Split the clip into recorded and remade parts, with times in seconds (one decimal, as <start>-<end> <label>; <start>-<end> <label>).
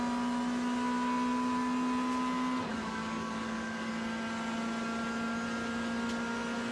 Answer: 0.0-2.7 recorded; 2.7-3.9 remade; 3.9-6.7 recorded